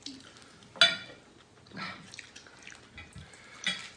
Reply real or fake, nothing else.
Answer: real